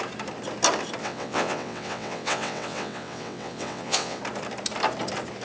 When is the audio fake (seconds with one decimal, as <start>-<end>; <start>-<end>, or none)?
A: 1.0-4.2